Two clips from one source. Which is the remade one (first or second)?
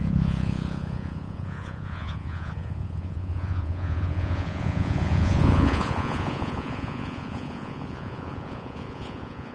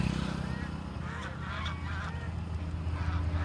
first